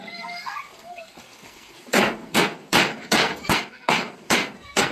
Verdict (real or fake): fake